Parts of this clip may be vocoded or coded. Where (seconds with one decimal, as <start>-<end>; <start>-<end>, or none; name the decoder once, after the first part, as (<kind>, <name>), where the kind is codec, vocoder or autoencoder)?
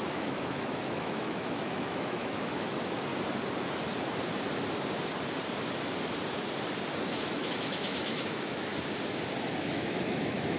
0.0-3.1 (autoencoder, DAC-VAE); 7.1-8.7; 9.6-10.6